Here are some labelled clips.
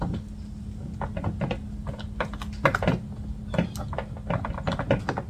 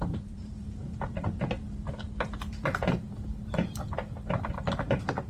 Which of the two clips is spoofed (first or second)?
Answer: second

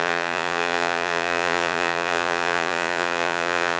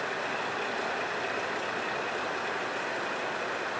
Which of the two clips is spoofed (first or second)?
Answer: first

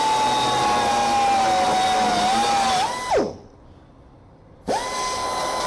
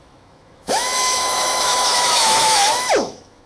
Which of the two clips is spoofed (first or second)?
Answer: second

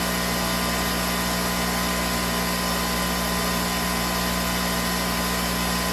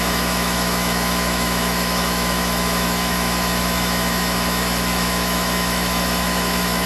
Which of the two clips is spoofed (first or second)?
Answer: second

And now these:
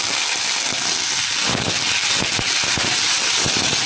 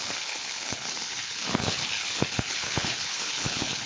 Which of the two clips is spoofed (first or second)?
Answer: second